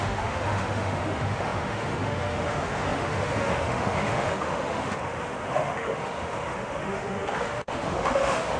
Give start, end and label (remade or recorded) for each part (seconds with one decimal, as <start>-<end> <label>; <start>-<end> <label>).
0.0-8.6 remade